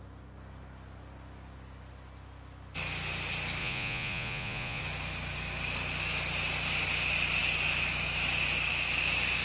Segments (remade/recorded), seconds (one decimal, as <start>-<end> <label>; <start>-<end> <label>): 0.0-3.6 recorded; 3.6-4.8 remade; 4.8-9.4 recorded